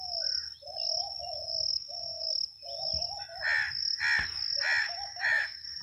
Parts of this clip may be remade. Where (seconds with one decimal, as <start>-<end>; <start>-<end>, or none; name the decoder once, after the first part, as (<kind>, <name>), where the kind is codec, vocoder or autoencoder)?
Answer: 1.7-2.3 (autoencoder, DAC-VAE); 4.8-5.8